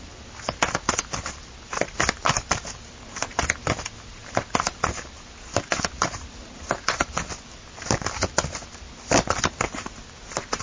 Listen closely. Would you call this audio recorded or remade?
recorded